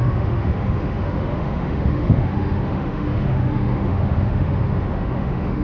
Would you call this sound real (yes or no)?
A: no